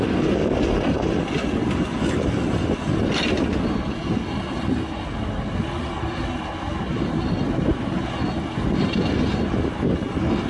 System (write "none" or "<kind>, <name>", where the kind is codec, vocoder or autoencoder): none